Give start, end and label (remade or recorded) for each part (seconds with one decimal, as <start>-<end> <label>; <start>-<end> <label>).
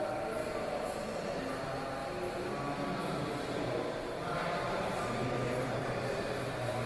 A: 0.0-6.9 recorded